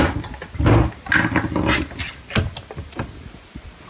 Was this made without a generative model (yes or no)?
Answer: yes